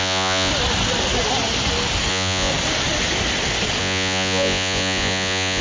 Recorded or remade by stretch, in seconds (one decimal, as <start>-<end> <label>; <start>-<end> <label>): 0.0-0.5 remade; 0.5-2.1 recorded; 2.1-2.5 remade; 2.5-3.8 recorded; 3.8-5.6 remade